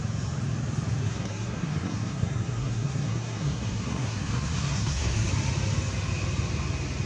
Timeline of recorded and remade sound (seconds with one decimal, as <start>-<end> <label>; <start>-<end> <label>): 0.0-1.0 recorded; 1.0-5.3 remade; 5.3-7.1 recorded